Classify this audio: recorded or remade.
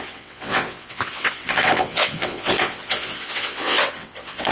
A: remade